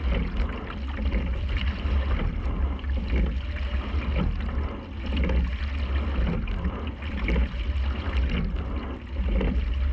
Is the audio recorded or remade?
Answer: recorded